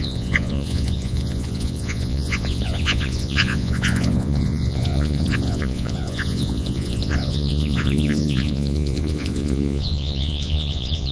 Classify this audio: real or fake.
fake